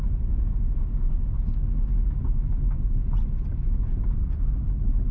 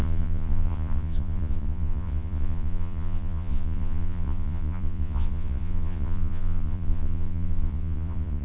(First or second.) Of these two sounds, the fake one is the second